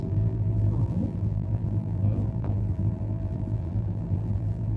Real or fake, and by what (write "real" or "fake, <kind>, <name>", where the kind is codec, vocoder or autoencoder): fake, vocoder, BigVGAN v2